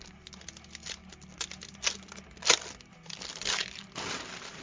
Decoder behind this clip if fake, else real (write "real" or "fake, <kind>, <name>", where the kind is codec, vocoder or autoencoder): real